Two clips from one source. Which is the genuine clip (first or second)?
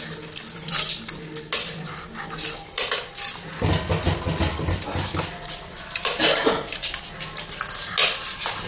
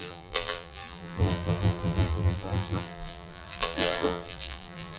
first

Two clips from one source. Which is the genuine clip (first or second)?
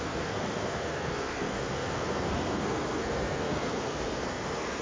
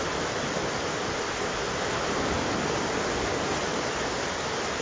second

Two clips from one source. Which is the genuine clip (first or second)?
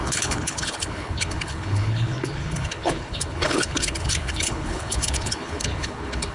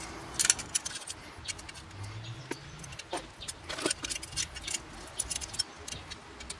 second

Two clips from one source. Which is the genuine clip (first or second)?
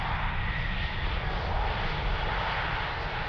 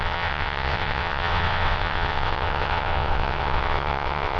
first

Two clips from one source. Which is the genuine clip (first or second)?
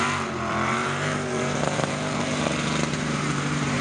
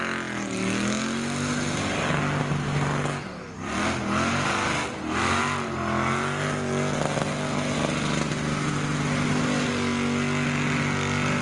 second